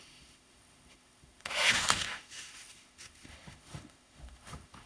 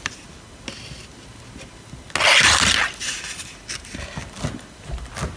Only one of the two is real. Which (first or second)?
second